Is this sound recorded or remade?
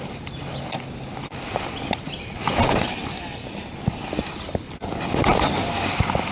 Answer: recorded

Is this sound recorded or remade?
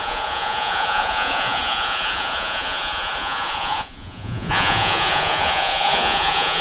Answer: remade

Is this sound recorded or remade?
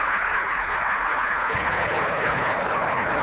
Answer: remade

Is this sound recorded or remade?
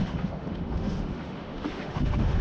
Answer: remade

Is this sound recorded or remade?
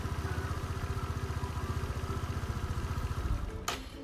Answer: recorded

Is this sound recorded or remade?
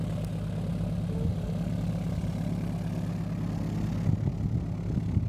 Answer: recorded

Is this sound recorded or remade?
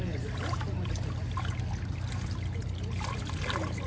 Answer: recorded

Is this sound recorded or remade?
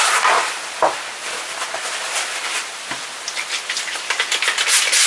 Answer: recorded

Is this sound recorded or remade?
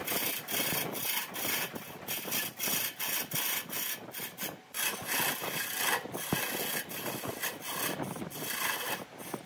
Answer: recorded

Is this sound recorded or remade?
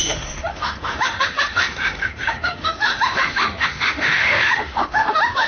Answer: remade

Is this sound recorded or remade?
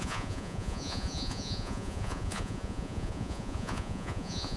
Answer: remade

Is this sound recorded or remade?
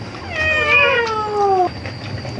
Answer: recorded